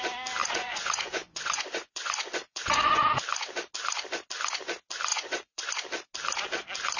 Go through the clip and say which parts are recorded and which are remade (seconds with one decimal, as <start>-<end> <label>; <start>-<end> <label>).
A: 0.0-0.4 recorded; 0.4-3.1 remade; 3.1-5.1 recorded; 5.1-5.7 remade; 5.7-7.0 recorded